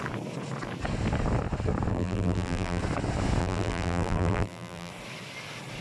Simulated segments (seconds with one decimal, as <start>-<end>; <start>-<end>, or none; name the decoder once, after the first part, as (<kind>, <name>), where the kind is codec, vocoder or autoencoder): 1.9-2.8 (vocoder, BigVGAN v2); 3.4-4.9